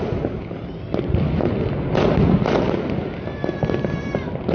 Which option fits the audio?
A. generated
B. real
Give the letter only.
B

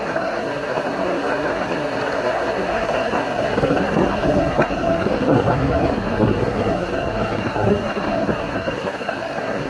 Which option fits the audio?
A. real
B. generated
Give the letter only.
B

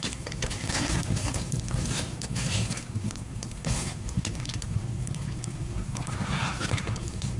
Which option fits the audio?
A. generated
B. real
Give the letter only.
A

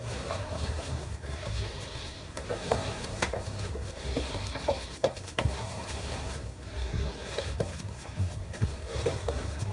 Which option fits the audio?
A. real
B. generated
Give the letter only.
B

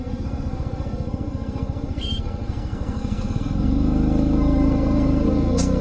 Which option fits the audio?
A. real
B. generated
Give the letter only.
B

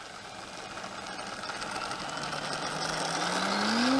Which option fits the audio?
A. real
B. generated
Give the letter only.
A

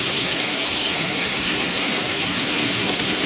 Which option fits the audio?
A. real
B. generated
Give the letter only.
B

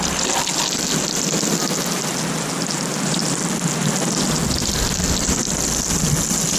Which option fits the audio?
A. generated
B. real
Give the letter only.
B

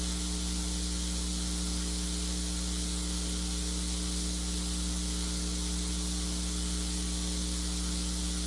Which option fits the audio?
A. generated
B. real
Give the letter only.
B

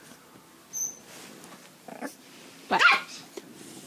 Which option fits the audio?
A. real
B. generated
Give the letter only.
A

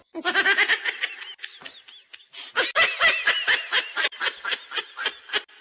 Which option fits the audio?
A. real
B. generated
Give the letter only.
A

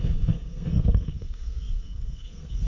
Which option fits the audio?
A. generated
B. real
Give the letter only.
A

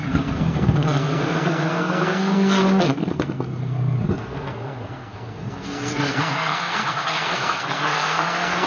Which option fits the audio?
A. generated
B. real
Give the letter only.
A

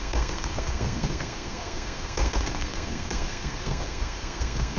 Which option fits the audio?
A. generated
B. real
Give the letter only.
A